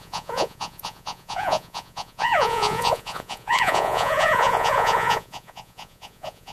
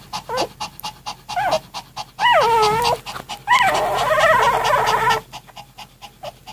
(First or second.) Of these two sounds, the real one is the second